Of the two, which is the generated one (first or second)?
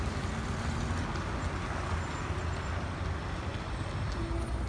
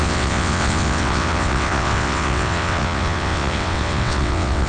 second